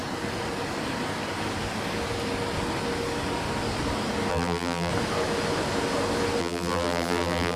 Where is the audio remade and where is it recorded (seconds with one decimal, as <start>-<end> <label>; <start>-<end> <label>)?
0.0-4.3 recorded; 4.3-4.9 remade; 4.9-6.4 recorded; 6.4-7.6 remade